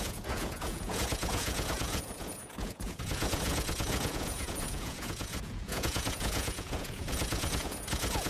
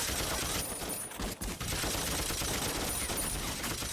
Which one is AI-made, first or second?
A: first